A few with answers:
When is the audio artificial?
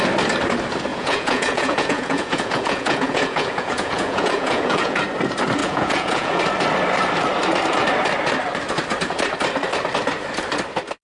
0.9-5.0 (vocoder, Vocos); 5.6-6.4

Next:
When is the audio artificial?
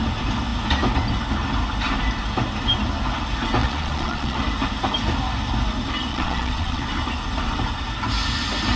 3.6-4.4 (vocoder, Vocos); 6.1-6.8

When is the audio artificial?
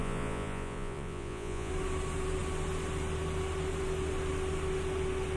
0.0-1.7 (vocoder, Vocos)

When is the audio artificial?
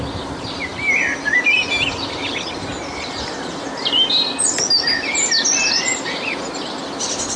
none